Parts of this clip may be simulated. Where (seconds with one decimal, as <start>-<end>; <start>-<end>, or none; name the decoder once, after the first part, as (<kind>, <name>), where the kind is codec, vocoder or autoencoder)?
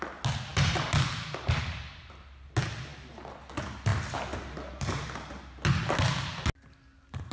none